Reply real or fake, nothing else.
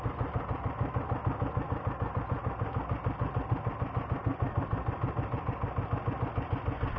real